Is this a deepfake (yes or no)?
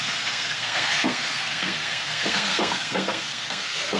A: yes